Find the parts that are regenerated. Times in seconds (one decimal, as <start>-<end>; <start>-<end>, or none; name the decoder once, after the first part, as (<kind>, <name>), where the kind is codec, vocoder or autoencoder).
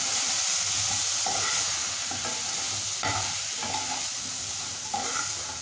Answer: none